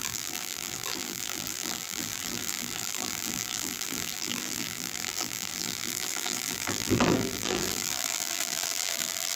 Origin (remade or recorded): remade